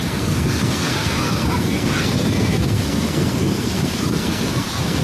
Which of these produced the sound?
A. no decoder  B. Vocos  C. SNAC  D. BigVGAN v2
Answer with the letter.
C